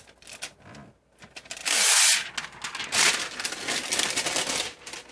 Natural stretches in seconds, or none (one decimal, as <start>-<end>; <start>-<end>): 0.0-5.1